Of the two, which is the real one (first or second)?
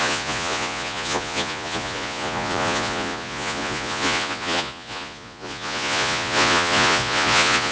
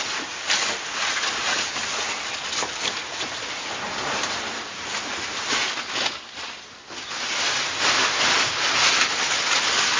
second